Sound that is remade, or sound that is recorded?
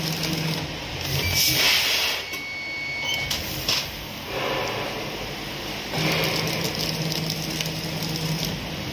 recorded